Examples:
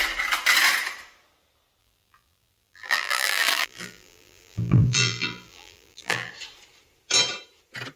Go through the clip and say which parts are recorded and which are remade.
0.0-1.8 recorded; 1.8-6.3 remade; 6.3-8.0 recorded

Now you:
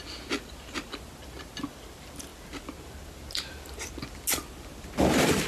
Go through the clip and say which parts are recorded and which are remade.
0.0-5.5 recorded

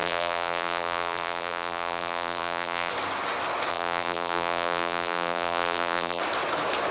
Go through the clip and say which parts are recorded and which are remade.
0.0-2.9 remade; 2.9-3.7 recorded; 3.7-6.2 remade; 6.2-6.9 recorded

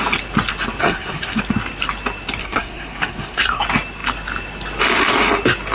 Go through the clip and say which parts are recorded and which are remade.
0.0-0.8 recorded; 0.8-1.4 remade; 1.4-2.4 recorded; 2.4-3.6 remade; 3.6-5.7 recorded

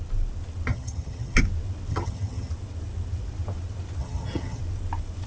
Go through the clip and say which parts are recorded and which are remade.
0.0-0.7 recorded; 0.7-1.4 remade; 1.4-1.9 recorded; 1.9-2.5 remade; 2.5-4.0 recorded; 4.0-4.6 remade; 4.6-5.3 recorded

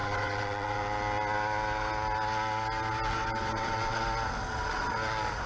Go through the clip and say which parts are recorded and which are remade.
0.0-0.8 remade; 0.8-3.2 recorded; 3.2-4.0 remade; 4.0-5.5 recorded

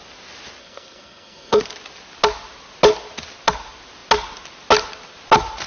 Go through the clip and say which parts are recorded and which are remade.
0.0-0.6 recorded; 0.6-1.6 remade; 1.6-5.7 recorded

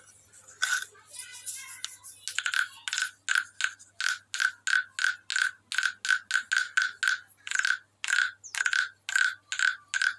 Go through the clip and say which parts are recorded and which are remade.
0.0-10.2 recorded